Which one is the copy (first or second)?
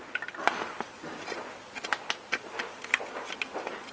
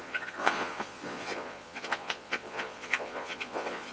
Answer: second